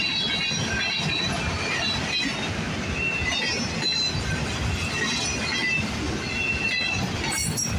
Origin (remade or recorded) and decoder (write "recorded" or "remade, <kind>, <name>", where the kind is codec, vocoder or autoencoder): recorded